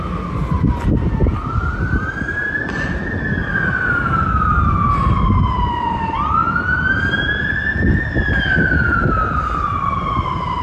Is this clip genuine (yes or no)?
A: yes